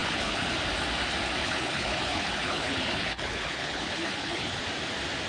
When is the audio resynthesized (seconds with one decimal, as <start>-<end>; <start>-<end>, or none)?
0.0-0.5; 1.4-4.6